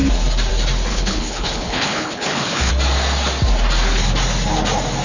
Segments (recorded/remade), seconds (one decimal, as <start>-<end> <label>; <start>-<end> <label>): 0.0-0.9 recorded; 0.9-2.7 remade; 2.7-5.0 recorded